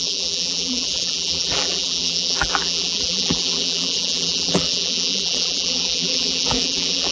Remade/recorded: remade